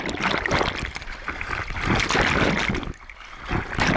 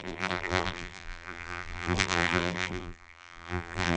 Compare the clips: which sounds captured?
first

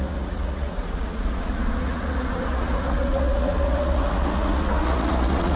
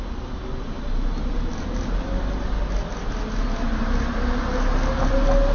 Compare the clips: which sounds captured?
second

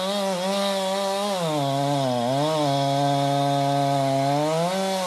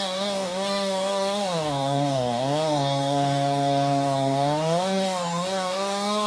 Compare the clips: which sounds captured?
first